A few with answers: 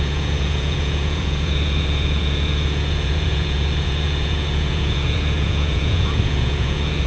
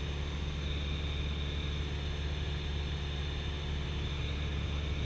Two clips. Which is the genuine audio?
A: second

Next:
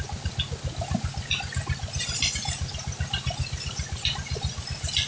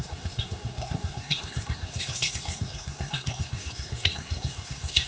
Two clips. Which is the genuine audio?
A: first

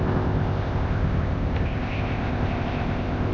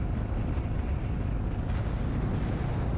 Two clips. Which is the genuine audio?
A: second